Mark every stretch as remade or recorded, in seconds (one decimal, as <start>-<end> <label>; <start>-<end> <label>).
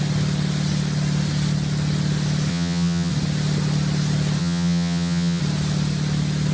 0.0-2.5 recorded; 2.5-3.1 remade; 3.1-4.4 recorded; 4.4-5.4 remade; 5.4-6.5 recorded